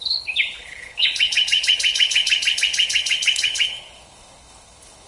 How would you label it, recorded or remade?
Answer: remade